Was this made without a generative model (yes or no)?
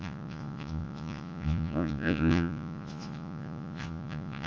no